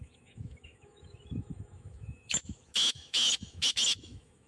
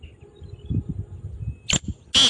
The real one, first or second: second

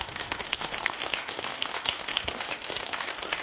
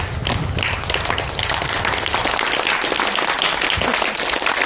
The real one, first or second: second